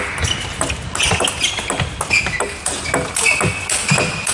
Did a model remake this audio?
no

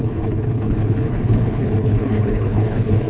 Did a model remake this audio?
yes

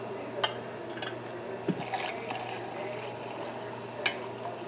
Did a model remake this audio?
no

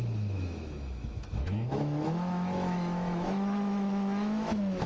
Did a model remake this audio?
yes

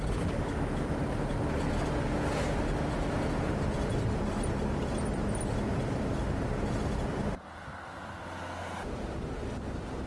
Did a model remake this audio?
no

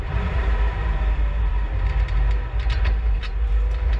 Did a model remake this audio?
yes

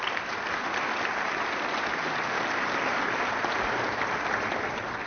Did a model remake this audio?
no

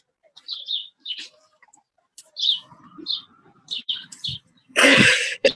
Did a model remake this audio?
yes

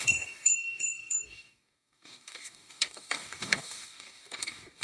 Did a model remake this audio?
yes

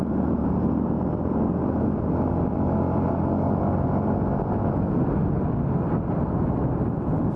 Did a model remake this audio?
no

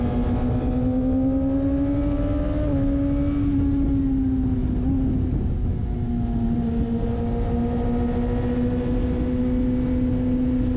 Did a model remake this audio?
no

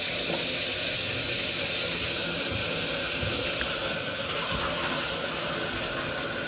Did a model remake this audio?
no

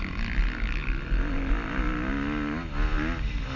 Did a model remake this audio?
no